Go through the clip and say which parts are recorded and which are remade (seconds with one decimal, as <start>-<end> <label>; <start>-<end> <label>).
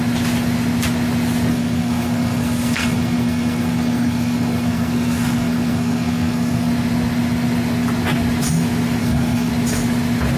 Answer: 0.0-1.5 recorded; 1.5-6.7 remade; 6.7-9.0 recorded; 9.0-9.5 remade; 9.5-10.4 recorded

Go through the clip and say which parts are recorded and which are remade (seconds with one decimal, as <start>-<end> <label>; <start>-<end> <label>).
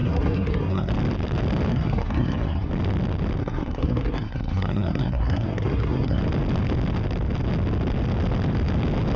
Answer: 0.0-0.9 remade; 0.9-1.7 recorded; 1.7-2.7 remade; 2.7-3.4 recorded; 3.4-6.2 remade; 6.2-9.2 recorded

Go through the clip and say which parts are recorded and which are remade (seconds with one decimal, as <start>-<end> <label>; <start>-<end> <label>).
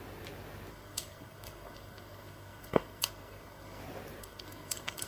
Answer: 0.0-0.7 recorded; 0.7-3.8 remade; 3.8-4.2 recorded; 4.2-5.1 remade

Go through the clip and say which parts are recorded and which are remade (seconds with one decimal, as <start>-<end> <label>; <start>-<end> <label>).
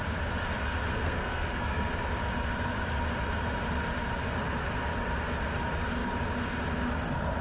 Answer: 0.0-0.9 recorded; 0.9-1.9 remade; 1.9-7.4 recorded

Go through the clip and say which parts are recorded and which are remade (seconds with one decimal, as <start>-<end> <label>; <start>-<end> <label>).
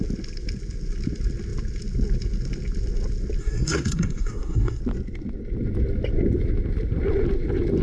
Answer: 0.0-3.4 recorded; 3.4-4.8 remade; 4.8-7.8 recorded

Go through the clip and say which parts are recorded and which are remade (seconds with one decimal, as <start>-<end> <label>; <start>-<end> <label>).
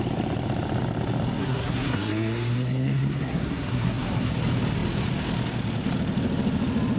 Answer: 0.0-1.4 recorded; 1.4-4.3 remade; 4.3-7.0 recorded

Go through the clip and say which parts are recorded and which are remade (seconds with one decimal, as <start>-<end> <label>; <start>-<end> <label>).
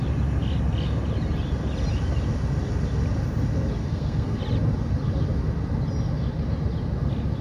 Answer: 0.0-3.8 recorded; 3.8-4.4 remade; 4.4-7.4 recorded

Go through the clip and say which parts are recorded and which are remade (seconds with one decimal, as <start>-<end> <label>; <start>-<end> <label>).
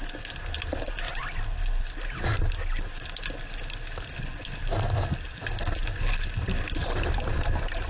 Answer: 0.0-7.9 recorded